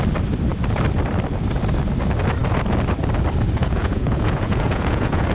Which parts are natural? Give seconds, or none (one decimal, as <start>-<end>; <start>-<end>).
0.0-3.6